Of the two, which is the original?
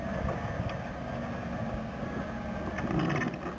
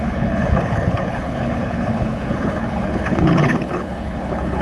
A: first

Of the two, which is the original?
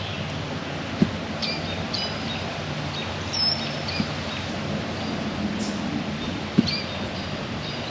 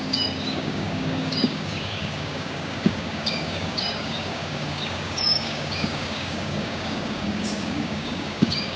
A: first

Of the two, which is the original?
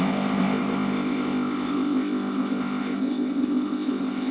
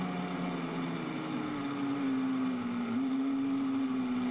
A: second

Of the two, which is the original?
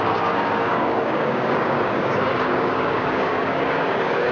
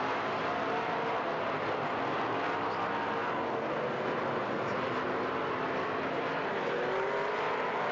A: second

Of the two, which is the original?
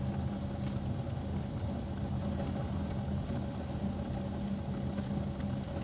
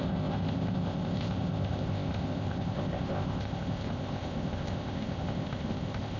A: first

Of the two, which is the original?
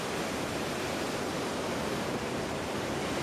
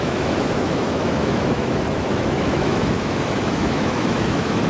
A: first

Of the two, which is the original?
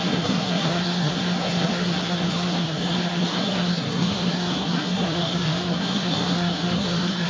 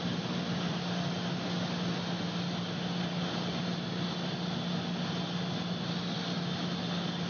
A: second